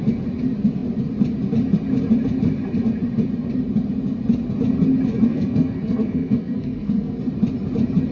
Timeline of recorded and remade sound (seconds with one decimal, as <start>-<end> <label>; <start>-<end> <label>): 0.0-5.3 recorded; 5.3-7.2 remade; 7.2-8.1 recorded